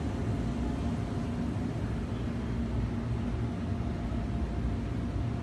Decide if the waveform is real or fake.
real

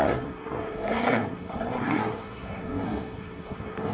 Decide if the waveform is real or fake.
fake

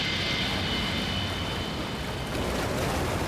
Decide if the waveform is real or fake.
real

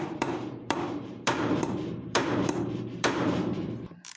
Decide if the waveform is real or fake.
fake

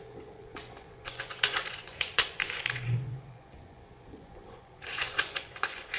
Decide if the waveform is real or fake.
fake